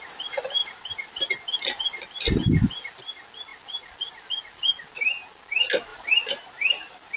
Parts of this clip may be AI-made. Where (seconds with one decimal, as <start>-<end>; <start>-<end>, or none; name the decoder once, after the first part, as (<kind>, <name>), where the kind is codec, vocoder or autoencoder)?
0.6-2.4 (vocoder, BigVGAN v2); 5.9-7.2